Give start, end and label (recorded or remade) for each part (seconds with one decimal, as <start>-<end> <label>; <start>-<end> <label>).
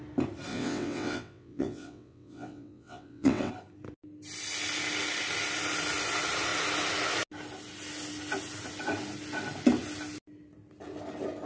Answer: 0.0-0.5 recorded; 0.5-3.5 remade; 3.5-11.5 recorded